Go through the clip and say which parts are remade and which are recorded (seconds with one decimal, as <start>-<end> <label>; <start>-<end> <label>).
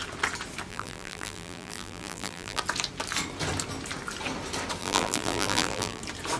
0.0-0.7 recorded; 0.7-2.6 remade; 2.6-4.8 recorded; 4.8-6.0 remade; 6.0-6.4 recorded